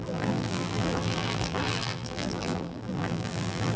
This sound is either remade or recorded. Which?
remade